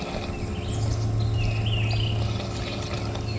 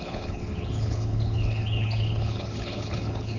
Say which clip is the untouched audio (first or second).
first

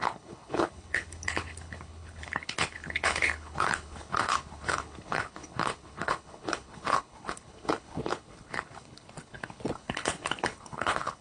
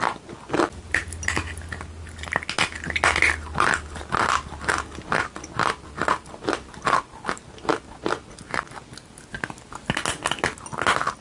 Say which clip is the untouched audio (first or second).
second